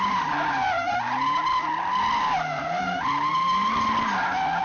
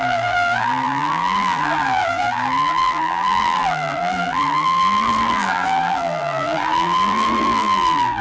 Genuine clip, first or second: first